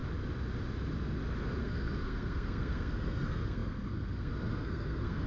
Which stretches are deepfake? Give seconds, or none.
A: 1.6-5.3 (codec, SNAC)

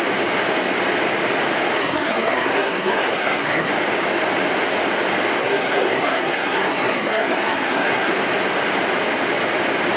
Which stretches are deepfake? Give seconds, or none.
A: 1.8-3.7 (codec, SNAC); 5.4-8.1

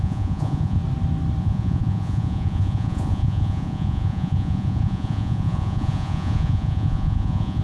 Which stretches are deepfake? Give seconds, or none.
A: 0.0-0.8 (vocoder, Vocos); 1.4-7.6

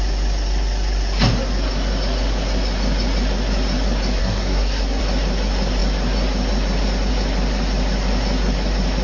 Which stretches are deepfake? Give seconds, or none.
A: 4.2-5.0 (codec, SNAC)

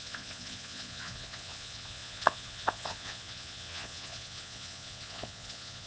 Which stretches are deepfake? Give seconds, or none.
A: 0.0-5.9 (vocoder, Vocos)

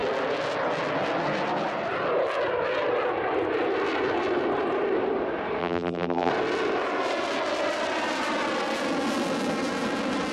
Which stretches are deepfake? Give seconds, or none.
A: 5.6-6.3 (vocoder, BigVGAN v2)

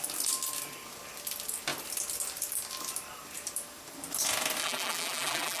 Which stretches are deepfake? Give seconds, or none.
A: 4.6-5.6 (vocoder, BigVGAN v2)